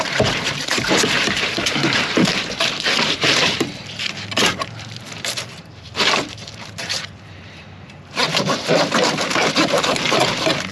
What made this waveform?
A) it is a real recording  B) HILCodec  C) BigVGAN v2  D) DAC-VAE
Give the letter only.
C